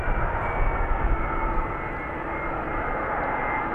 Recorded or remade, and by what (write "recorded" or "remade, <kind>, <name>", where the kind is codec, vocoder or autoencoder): recorded